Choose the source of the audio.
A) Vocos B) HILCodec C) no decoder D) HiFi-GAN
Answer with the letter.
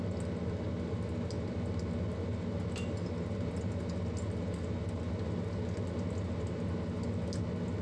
C